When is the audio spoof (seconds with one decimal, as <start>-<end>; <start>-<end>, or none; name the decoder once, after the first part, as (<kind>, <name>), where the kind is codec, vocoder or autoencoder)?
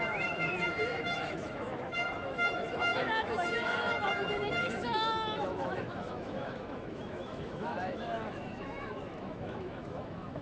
0.0-10.4 (autoencoder, DAC-VAE)